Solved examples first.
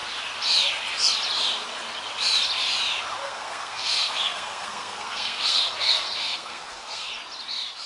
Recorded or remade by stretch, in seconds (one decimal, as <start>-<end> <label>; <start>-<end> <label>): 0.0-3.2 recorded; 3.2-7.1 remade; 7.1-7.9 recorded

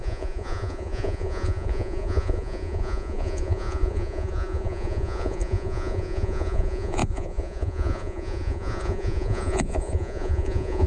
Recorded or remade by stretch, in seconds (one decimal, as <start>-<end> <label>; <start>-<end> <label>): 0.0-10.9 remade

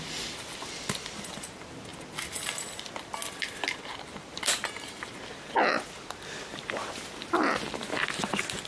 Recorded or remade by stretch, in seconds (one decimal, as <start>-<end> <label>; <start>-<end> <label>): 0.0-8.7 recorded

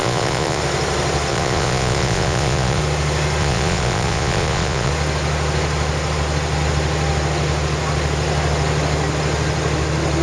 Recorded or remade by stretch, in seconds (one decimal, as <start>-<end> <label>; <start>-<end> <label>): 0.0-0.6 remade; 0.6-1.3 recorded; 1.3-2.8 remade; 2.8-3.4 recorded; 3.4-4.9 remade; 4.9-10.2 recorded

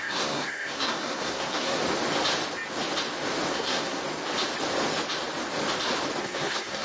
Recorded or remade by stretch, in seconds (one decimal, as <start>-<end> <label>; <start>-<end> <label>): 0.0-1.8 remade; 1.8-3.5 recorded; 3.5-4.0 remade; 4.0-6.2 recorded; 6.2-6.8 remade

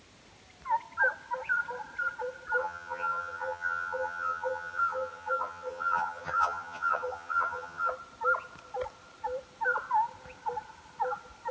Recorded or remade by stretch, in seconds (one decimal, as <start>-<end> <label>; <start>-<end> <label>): 0.0-2.6 recorded; 2.6-7.9 remade; 7.9-11.5 recorded

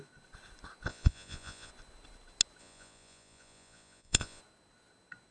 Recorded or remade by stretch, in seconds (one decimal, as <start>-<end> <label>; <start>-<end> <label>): 0.0-0.9 recorded; 0.9-1.7 remade; 1.7-2.6 recorded; 2.6-4.4 remade; 4.4-5.3 recorded

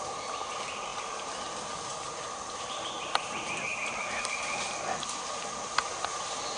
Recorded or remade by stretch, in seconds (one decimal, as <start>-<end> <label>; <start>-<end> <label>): 0.0-6.6 recorded